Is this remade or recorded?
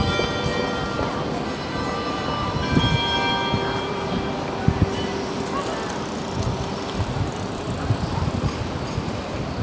recorded